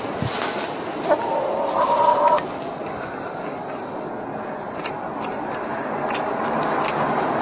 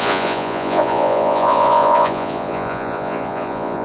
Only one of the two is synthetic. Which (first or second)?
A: second